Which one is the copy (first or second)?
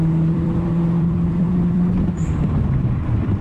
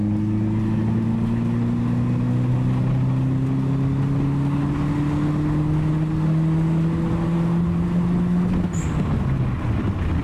first